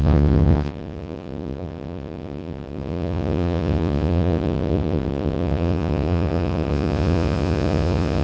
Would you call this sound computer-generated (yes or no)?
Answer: yes